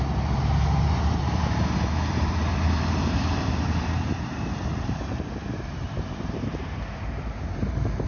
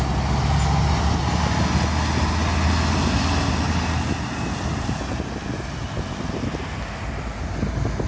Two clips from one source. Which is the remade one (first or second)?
first